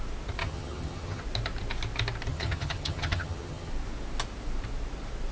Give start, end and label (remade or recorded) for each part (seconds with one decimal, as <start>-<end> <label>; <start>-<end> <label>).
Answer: 0.0-0.4 recorded; 0.4-1.2 remade; 1.2-2.3 recorded; 2.3-3.7 remade; 3.7-5.3 recorded